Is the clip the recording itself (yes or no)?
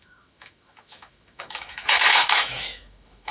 no